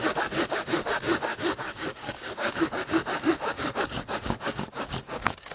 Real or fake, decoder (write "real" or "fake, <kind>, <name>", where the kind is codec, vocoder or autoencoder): fake, codec, DAC